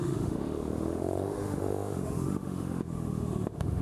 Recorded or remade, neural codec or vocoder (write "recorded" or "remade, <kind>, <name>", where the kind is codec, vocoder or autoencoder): remade, autoencoder, DAC-VAE